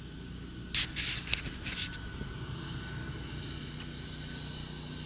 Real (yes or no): yes